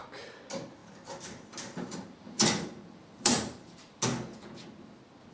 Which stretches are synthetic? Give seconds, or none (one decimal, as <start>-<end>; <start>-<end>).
0.8-4.0